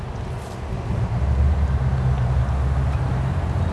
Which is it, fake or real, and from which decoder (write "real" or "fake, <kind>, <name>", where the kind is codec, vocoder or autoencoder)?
real